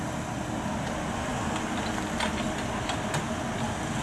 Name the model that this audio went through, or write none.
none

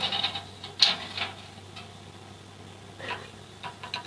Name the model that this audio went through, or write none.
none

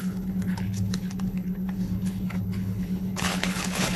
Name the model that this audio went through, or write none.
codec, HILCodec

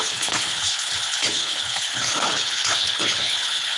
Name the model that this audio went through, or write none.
codec, HILCodec